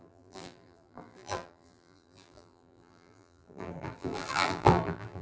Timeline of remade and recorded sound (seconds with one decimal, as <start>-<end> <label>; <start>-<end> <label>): 0.0-5.2 remade